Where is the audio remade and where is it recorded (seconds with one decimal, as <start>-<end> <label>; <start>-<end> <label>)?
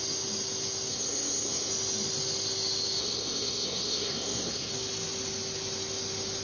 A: 0.0-0.9 recorded; 0.9-1.7 remade; 1.7-3.0 recorded; 3.0-4.7 remade; 4.7-6.4 recorded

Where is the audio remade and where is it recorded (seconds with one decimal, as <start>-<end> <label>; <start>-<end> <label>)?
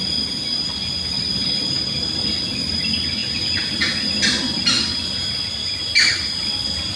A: 0.0-7.0 recorded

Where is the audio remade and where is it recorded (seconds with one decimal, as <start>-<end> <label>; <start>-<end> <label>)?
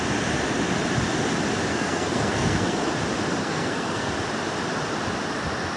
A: 0.0-1.7 recorded; 1.7-2.9 remade; 2.9-3.4 recorded; 3.4-4.1 remade; 4.1-5.8 recorded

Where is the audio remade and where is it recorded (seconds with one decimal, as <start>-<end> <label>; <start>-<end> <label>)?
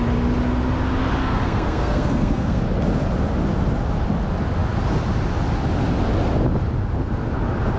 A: 0.0-1.2 recorded; 1.2-2.6 remade; 2.6-7.8 recorded